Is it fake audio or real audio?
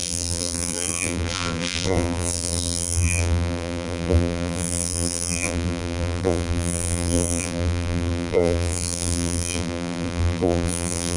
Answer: fake